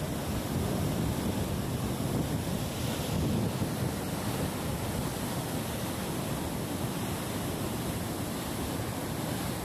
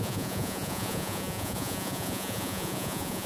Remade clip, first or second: second